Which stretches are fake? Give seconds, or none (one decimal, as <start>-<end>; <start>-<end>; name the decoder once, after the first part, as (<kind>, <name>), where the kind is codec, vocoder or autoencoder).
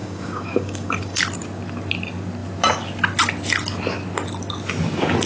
0.0-1.2 (codec, DAC)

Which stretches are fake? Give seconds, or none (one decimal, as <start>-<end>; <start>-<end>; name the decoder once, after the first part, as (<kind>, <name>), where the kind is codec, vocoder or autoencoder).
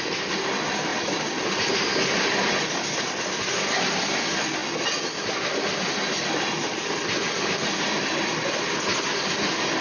none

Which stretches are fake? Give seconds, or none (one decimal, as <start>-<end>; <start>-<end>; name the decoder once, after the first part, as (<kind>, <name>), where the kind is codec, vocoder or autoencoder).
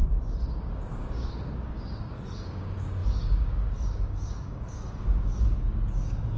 0.6-6.4 (codec, DAC)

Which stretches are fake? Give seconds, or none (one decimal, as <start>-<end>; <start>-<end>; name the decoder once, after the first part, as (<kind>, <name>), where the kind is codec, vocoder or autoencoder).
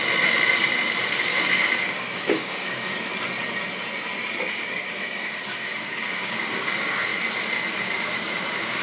1.1-3.1 (codec, DAC); 4.5-7.1; 7.8-8.8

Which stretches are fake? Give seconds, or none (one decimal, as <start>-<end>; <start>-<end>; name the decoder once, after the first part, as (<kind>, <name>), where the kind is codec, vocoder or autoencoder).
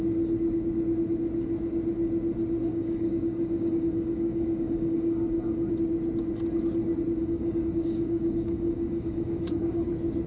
2.7-5.7 (codec, DAC); 7.2-9.9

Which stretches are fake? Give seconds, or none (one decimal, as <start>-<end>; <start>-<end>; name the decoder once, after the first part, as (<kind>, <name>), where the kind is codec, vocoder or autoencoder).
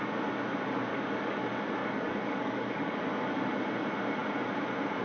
0.9-1.4 (codec, DAC); 1.8-3.0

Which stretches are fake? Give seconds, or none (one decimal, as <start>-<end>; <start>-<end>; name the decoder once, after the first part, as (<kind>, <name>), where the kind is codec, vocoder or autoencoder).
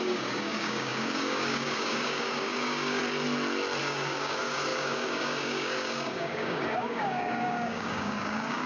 0.0-3.0 (codec, DAC); 3.8-8.7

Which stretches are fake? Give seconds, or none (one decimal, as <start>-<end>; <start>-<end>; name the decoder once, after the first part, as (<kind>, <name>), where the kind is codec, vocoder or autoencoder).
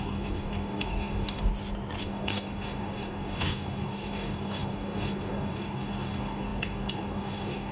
0.0-1.5 (codec, DAC); 2.0-7.7